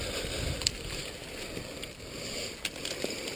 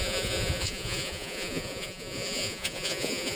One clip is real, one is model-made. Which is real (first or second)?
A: first